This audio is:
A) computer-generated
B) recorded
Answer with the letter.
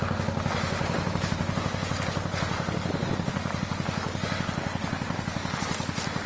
B